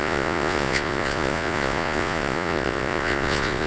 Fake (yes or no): yes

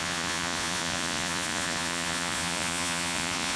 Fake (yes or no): yes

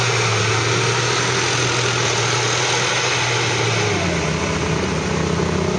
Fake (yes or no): no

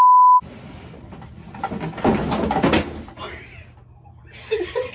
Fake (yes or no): no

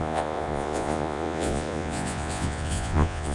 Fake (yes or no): yes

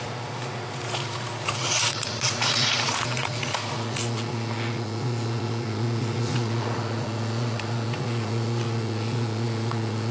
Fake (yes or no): yes